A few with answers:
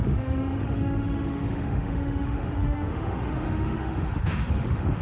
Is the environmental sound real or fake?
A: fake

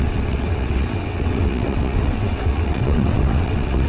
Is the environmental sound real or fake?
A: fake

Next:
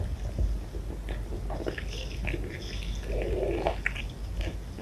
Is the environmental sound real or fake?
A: real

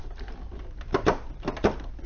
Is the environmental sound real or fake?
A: real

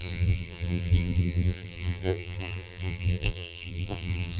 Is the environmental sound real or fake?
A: fake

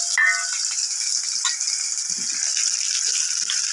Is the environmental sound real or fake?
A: real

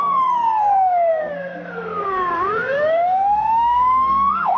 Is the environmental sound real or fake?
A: fake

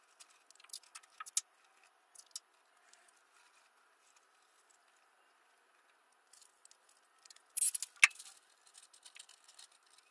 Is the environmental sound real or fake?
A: real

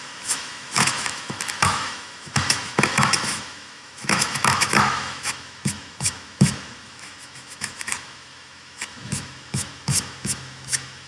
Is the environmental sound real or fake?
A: fake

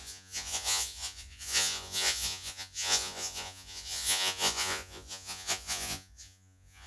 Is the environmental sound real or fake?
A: fake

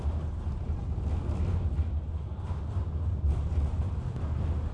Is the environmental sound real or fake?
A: real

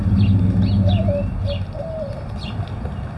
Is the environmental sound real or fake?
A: real